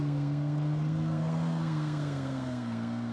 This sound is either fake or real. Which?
fake